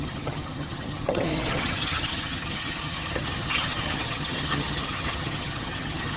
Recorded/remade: remade